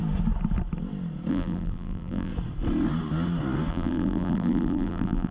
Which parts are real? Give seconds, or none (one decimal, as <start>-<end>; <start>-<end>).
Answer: 0.0-1.3; 2.3-3.7